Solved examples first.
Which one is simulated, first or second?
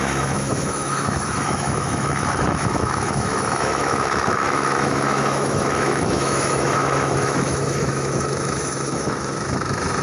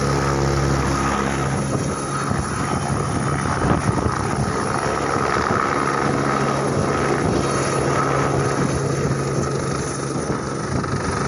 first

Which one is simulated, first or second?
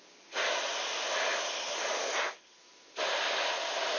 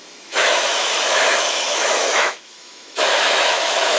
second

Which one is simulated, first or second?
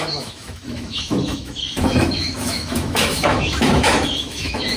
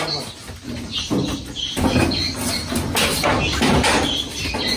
first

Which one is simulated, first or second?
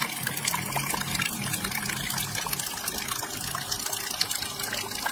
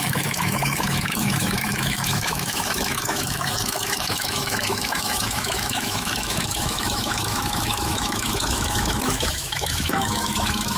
second